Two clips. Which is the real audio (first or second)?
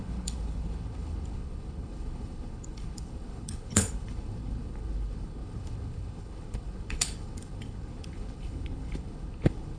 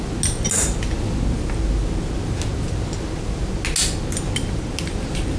second